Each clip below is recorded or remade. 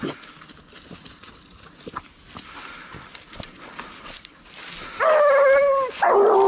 recorded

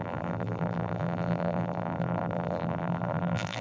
remade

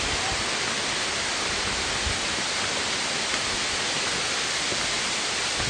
recorded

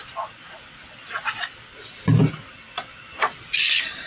recorded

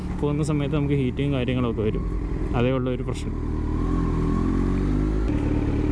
recorded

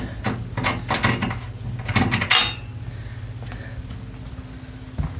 recorded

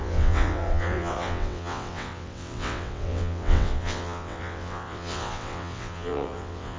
remade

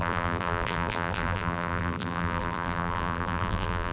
remade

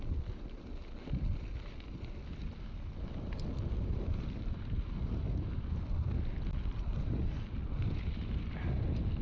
recorded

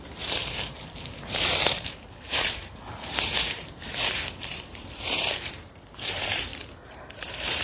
remade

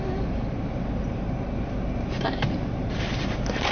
recorded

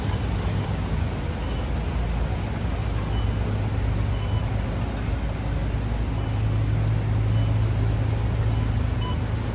recorded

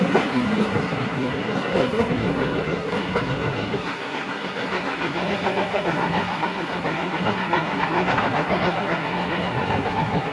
remade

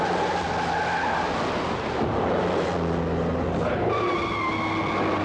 recorded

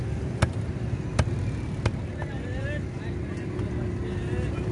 recorded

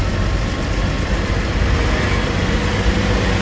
recorded